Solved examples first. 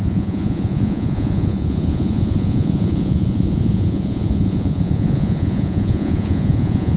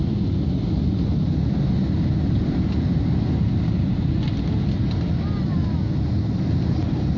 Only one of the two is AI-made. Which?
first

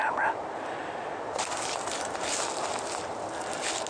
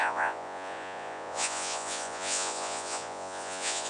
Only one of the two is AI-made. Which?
second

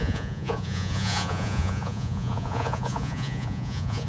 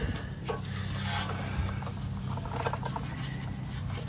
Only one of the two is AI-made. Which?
first